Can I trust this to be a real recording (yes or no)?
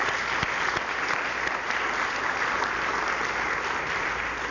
yes